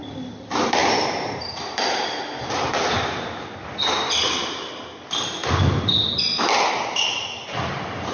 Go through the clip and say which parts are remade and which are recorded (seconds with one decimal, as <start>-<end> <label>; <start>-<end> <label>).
0.0-0.8 recorded; 0.8-2.7 remade; 2.7-8.1 recorded